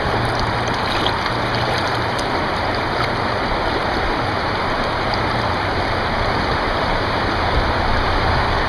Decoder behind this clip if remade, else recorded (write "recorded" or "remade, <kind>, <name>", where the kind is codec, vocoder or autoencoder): remade, vocoder, BigVGAN v2